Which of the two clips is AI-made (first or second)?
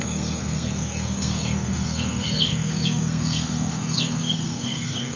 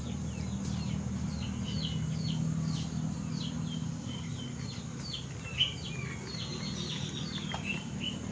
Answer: first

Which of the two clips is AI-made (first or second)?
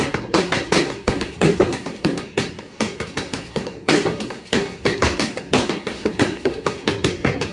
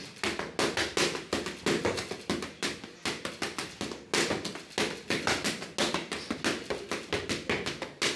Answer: first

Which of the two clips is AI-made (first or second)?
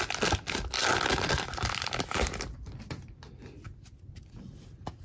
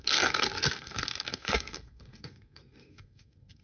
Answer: second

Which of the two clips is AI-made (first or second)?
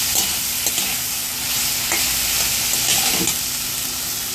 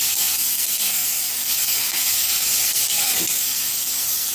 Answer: second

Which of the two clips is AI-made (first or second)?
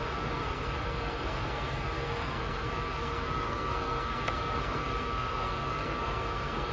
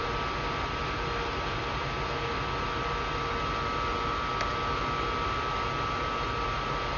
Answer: first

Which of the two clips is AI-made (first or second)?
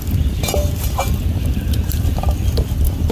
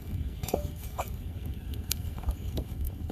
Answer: second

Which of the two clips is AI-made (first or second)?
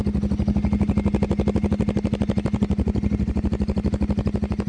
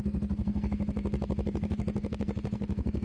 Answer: second